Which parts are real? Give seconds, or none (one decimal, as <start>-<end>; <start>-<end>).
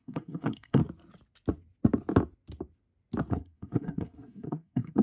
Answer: 0.8-3.3